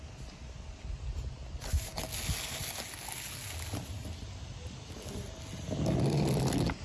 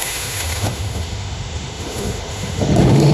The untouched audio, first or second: first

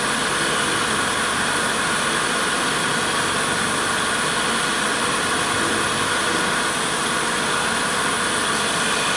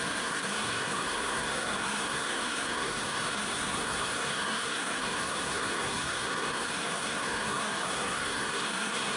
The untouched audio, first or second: first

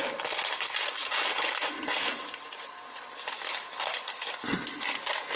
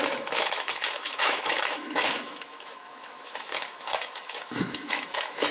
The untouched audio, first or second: first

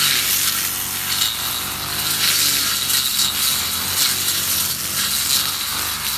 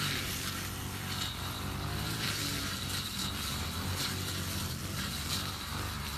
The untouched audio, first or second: first